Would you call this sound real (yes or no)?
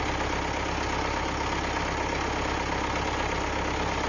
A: yes